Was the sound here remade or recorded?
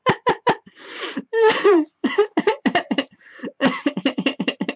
remade